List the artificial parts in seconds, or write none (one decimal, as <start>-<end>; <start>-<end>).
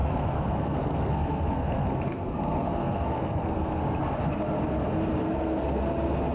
0.0-3.8; 5.2-5.8